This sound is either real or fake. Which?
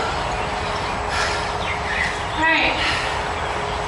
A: real